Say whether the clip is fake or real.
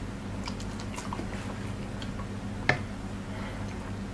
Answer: real